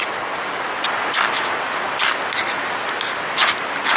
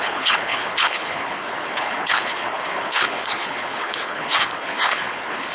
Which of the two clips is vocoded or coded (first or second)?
second